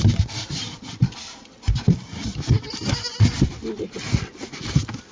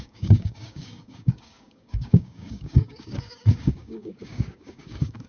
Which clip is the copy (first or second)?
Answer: second